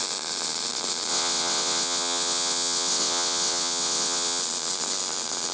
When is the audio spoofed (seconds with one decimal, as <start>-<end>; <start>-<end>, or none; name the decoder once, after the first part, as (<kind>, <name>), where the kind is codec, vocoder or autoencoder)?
1.1-4.4 (vocoder, WaveNeXt)